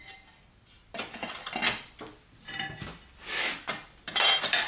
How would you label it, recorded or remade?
recorded